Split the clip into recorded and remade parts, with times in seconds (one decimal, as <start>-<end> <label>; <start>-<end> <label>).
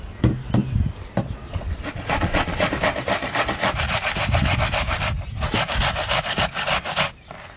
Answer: 0.0-1.4 recorded; 1.4-2.7 remade; 2.7-7.6 recorded